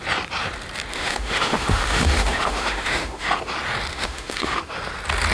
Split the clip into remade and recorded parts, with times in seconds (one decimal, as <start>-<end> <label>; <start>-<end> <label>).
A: 0.0-0.9 recorded; 0.9-3.4 remade; 3.4-3.9 recorded; 3.9-4.6 remade; 4.6-5.3 recorded